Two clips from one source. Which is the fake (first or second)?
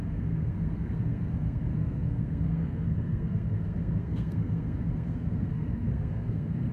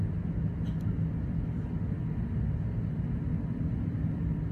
first